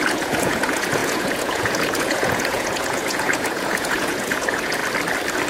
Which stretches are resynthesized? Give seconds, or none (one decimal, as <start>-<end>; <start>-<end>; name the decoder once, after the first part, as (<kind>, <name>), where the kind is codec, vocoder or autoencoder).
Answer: 0.0-4.8 (vocoder, Vocos)